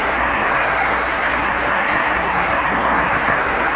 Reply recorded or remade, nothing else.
remade